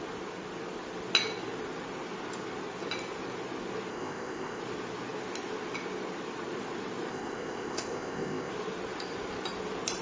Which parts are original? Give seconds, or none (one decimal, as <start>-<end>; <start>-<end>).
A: 0.0-3.9; 4.6-7.1; 8.5-10.0